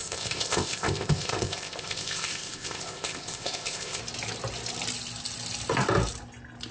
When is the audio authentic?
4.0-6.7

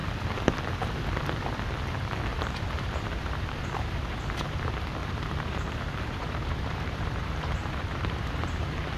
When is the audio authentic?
0.0-2.3; 4.6-5.0